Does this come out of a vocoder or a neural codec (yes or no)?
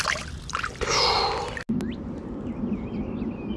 no